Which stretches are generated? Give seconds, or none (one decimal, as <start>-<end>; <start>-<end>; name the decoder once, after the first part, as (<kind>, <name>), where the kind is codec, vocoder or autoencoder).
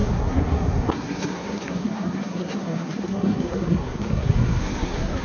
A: 0.0-5.2 (codec, SNAC)